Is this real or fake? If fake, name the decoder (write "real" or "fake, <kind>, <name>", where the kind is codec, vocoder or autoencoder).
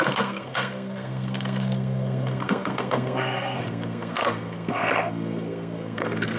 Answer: fake, codec, SNAC